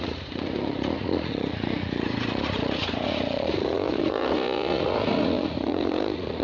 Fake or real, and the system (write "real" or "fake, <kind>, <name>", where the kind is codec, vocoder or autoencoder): fake, vocoder, Vocos